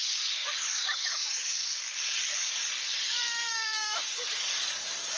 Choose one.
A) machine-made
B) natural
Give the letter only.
A